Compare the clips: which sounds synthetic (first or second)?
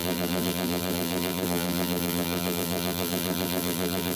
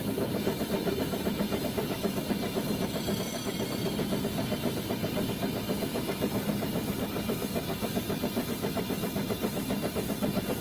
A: first